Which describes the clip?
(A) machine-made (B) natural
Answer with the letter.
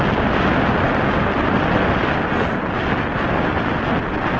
B